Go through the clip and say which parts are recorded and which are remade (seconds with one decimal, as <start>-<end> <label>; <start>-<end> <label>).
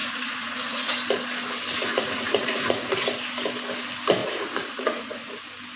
0.0-0.9 remade; 0.9-1.9 recorded; 1.9-2.9 remade; 2.9-4.2 recorded; 4.2-5.3 remade; 5.3-5.8 recorded